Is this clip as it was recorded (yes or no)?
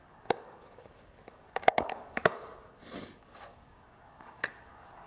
no